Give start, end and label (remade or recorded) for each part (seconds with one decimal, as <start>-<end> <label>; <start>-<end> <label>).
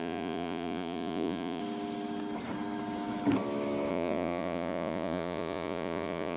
0.0-1.6 remade; 1.6-3.9 recorded; 3.9-6.4 remade